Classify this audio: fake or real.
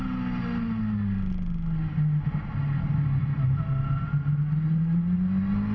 real